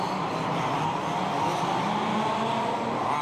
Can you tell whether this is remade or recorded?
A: recorded